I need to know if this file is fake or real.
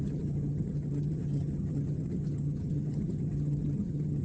fake